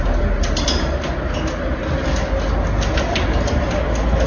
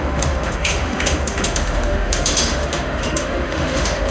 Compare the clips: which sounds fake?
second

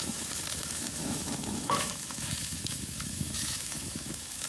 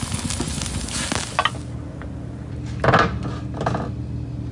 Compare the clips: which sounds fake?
first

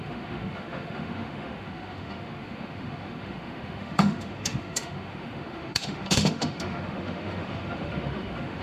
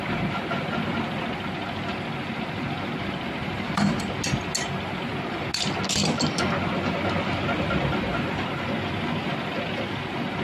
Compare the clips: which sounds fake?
first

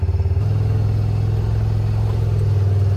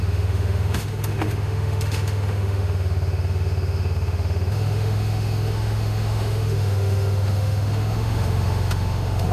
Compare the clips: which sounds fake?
second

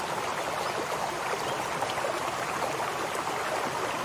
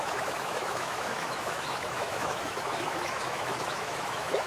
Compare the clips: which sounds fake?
second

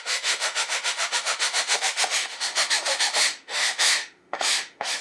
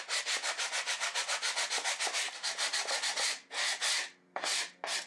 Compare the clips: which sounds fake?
first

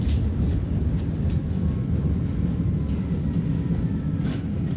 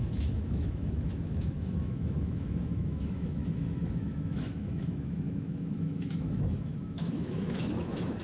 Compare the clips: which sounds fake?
second